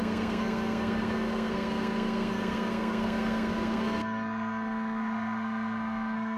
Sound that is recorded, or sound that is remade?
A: remade